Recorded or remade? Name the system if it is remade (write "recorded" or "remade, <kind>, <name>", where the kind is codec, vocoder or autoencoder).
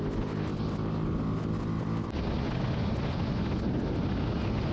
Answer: recorded